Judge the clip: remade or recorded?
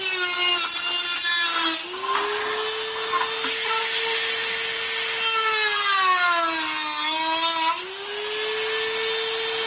recorded